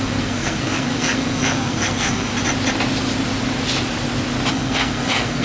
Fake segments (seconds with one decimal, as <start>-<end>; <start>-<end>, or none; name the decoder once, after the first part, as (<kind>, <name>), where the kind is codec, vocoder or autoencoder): 0.0-2.3 (codec, SNAC); 4.5-5.4